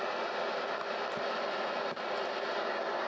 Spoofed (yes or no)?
no